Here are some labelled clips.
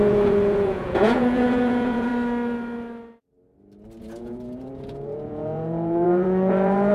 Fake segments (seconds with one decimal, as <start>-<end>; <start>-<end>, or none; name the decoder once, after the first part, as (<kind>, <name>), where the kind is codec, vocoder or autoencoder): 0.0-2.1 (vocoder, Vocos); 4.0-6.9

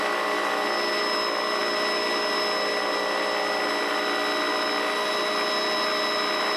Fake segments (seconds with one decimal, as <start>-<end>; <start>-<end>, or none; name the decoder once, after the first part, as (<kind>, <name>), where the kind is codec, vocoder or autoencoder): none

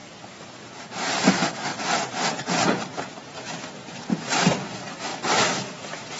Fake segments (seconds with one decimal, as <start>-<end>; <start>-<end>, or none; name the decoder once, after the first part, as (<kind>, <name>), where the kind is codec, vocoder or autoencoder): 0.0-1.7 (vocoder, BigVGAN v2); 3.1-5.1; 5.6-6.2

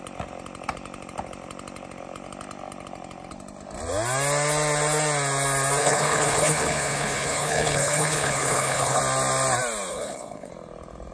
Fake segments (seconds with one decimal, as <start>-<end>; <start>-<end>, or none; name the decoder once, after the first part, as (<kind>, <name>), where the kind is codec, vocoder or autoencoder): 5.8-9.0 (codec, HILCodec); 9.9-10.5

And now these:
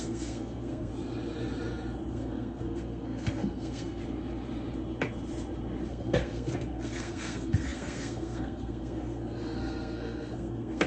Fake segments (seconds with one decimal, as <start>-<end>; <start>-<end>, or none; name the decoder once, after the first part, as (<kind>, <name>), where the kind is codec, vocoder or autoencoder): 0.0-0.9 (codec, SNAC); 2.1-4.0; 5.9-10.9